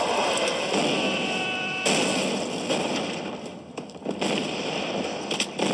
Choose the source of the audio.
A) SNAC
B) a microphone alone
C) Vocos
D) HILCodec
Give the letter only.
B